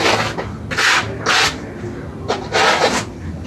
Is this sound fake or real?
real